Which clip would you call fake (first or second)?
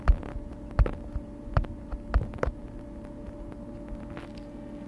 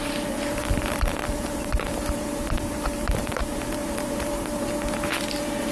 second